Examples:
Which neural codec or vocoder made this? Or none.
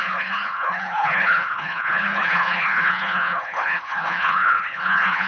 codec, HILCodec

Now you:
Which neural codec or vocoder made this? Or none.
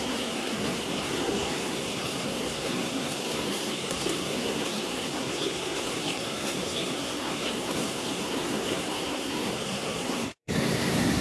codec, SNAC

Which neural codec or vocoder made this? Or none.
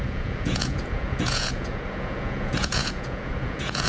vocoder, Vocos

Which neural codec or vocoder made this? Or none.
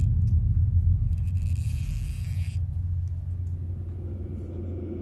none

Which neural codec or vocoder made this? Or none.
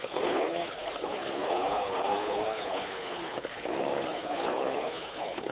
codec, HILCodec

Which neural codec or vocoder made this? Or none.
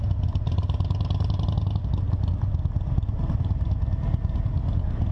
none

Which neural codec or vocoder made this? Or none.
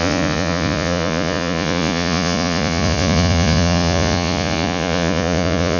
vocoder, Vocos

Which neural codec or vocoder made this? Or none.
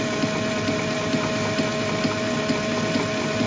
none